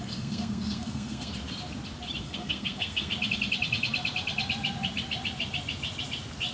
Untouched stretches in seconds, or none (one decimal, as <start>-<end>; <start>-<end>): 1.3-2.2; 3.1-6.5